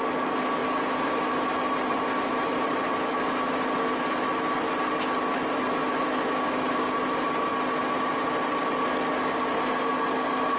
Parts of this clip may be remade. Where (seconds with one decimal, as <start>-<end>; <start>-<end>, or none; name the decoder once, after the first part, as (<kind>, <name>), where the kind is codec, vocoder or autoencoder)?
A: none